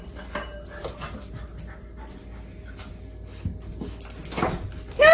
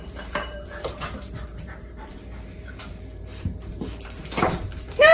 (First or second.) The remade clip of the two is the second